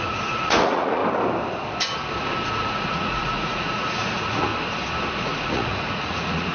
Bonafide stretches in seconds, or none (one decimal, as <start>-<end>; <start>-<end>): 1.0-2.5; 4.5-5.1